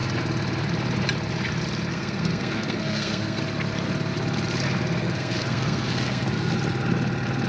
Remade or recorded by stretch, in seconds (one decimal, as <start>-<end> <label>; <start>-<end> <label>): 0.0-1.9 recorded; 1.9-3.4 remade; 3.4-5.0 recorded; 5.0-6.5 remade; 6.5-7.5 recorded

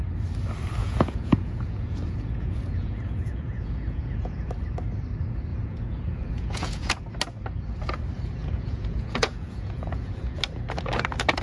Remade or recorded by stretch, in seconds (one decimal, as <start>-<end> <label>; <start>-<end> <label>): 0.0-0.8 recorded; 0.8-4.5 remade; 4.5-5.5 recorded; 5.5-7.0 remade; 7.0-8.4 recorded; 8.4-10.4 remade; 10.4-11.4 recorded

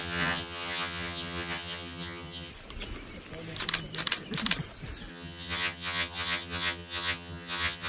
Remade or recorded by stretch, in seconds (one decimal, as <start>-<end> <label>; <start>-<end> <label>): 0.0-2.5 remade; 2.5-5.1 recorded; 5.1-7.9 remade